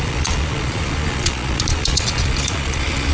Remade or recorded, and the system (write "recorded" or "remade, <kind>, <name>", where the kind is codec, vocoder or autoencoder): remade, vocoder, Vocos